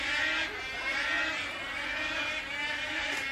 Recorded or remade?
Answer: recorded